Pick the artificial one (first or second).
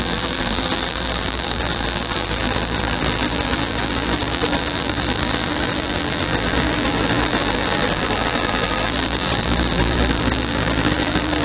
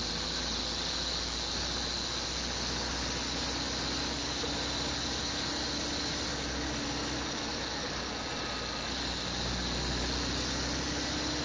first